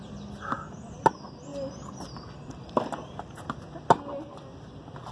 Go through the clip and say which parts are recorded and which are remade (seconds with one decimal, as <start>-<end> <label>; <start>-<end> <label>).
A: 0.0-1.5 recorded; 1.5-3.1 remade; 3.1-5.1 recorded